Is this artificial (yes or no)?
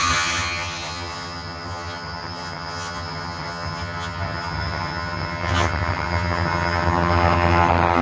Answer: yes